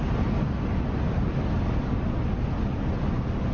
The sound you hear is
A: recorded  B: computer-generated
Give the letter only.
A